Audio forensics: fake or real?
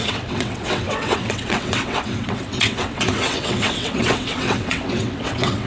fake